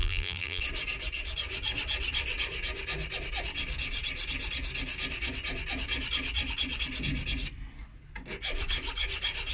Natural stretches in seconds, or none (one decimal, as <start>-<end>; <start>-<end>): 0.6-9.5